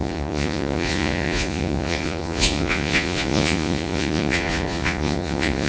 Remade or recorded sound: remade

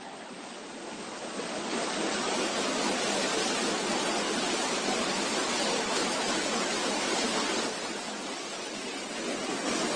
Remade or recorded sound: recorded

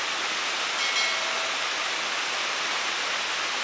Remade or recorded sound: recorded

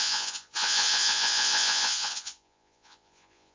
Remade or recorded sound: remade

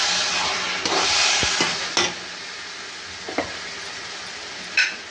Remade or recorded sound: recorded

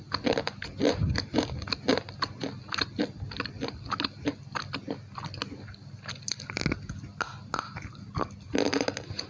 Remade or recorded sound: recorded